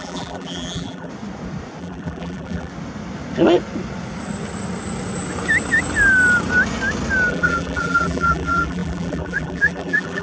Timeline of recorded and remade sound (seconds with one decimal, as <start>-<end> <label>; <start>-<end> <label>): 0.0-1.1 remade; 1.1-1.8 recorded; 1.8-2.7 remade; 2.7-7.3 recorded; 7.3-10.2 remade